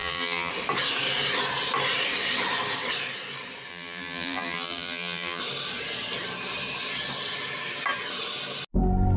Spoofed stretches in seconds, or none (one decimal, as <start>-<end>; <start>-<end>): 0.0-0.5; 3.7-5.4